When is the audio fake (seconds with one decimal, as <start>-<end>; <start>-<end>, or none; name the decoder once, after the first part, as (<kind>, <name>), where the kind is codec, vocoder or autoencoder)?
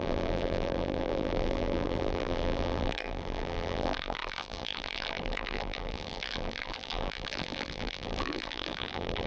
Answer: 0.0-9.3 (vocoder, BigVGAN v2)